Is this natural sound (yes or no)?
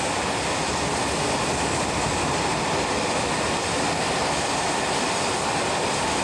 yes